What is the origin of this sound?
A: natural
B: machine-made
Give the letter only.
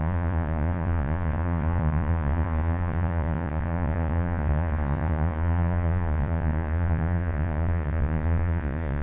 B